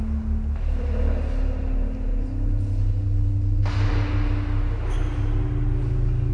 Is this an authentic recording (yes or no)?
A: yes